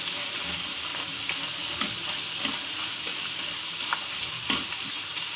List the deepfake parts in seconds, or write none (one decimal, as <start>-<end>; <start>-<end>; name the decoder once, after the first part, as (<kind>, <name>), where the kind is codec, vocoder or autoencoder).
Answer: 0.9-2.6 (vocoder, BigVGAN v2); 3.1-4.9